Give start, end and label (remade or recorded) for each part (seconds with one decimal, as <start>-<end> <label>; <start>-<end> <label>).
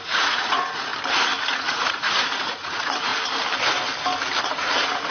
0.0-0.9 remade; 0.9-1.5 recorded; 1.5-3.1 remade; 3.1-4.4 recorded; 4.4-5.1 remade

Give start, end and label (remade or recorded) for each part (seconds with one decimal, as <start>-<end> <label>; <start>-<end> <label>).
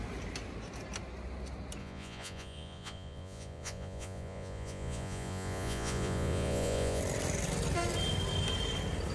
0.0-1.8 recorded; 1.8-7.0 remade; 7.0-9.1 recorded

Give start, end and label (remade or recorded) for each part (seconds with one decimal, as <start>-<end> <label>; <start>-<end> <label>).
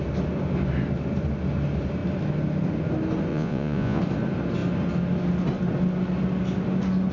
0.0-3.3 recorded; 3.3-4.0 remade; 4.0-7.1 recorded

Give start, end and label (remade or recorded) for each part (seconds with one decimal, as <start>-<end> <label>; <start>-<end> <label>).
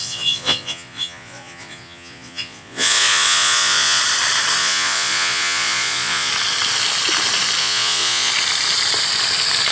0.0-4.0 remade; 4.0-4.6 recorded; 4.6-6.3 remade; 6.3-7.6 recorded; 7.6-8.3 remade; 8.3-9.7 recorded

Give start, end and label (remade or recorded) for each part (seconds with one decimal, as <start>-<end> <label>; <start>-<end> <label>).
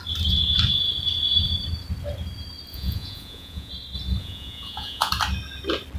0.0-2.7 recorded; 2.7-3.7 remade; 3.7-4.2 recorded; 4.2-5.1 remade; 5.1-6.0 recorded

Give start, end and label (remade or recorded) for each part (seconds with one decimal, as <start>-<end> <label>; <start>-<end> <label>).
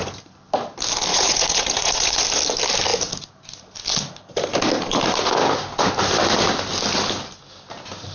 0.0-1.1 recorded; 1.1-2.2 remade; 2.2-8.1 recorded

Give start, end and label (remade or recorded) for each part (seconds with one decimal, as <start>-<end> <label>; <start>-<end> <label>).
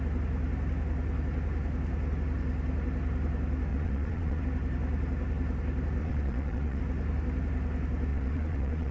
0.0-3.7 recorded; 3.7-4.4 remade; 4.4-6.0 recorded; 6.0-6.8 remade; 6.8-8.1 recorded; 8.1-8.9 remade